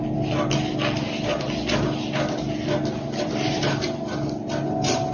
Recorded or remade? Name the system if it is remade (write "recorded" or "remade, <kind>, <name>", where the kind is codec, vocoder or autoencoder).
recorded